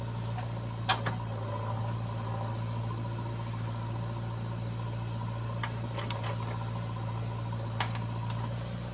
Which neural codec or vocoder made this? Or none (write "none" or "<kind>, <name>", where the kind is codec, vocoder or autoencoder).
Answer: none